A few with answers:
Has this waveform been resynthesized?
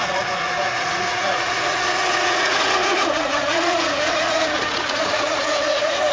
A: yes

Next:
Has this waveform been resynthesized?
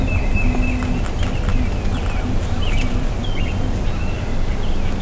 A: no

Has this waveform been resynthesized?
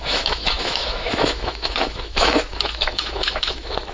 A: yes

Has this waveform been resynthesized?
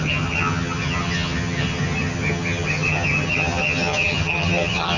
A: yes